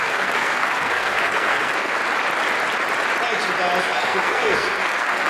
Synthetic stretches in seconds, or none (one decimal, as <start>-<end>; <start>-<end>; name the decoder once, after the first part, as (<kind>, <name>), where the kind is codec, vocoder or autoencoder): 0.0-2.0 (codec, SNAC); 3.8-5.3